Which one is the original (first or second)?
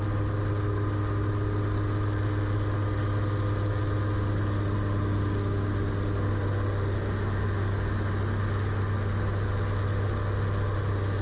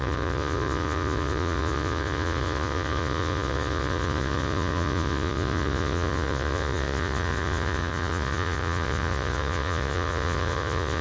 first